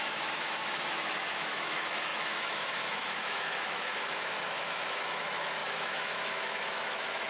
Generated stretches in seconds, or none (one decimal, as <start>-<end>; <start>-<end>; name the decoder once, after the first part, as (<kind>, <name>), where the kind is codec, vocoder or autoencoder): 0.0-7.3 (autoencoder, DAC-VAE)